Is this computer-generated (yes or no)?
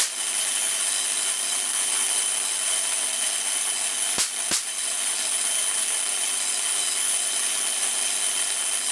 no